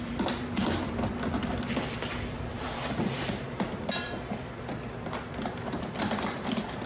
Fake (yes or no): yes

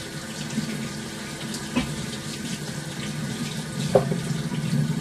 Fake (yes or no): no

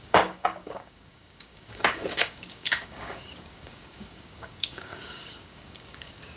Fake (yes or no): yes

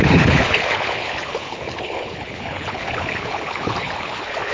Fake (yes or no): yes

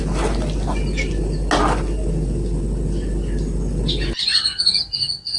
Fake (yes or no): no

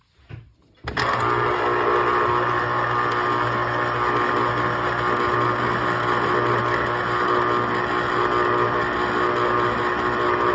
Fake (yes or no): no